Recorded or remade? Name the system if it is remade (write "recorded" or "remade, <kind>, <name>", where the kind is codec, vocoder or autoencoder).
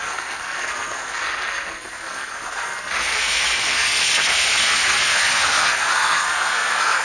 remade, codec, SNAC